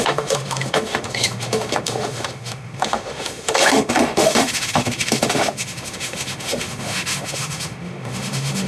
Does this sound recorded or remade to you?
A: remade